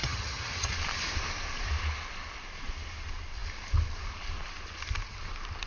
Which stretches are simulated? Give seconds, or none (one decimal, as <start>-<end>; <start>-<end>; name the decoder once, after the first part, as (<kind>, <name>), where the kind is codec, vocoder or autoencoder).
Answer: 0.0-0.7 (vocoder, HiFi-GAN)